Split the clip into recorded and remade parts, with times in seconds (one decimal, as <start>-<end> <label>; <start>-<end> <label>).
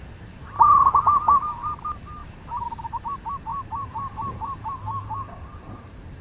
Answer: 0.0-0.4 remade; 0.4-1.2 recorded; 1.2-2.2 remade; 2.2-2.8 recorded; 2.8-6.2 remade